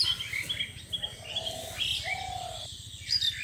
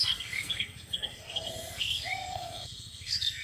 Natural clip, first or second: first